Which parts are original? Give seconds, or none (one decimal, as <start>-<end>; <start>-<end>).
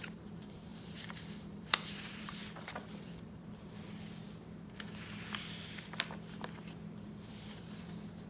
2.4-3.0; 3.4-7.3